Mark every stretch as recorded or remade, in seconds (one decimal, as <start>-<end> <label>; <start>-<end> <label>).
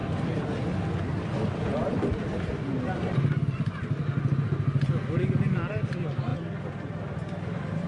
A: 0.0-1.1 recorded; 1.1-6.3 remade; 6.3-7.0 recorded; 7.0-7.9 remade